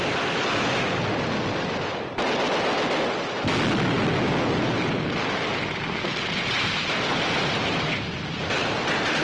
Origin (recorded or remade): recorded